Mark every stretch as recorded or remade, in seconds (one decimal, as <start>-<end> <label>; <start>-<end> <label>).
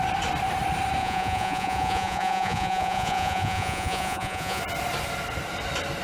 0.0-1.0 recorded; 1.0-4.6 remade; 4.6-6.0 recorded